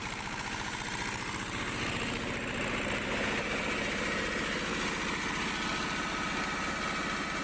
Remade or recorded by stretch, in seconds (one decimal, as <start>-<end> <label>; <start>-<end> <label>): 0.0-7.4 recorded